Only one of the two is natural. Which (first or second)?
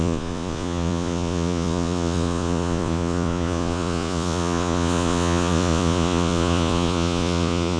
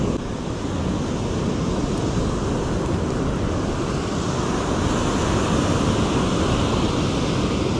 second